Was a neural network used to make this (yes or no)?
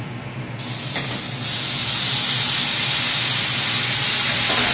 no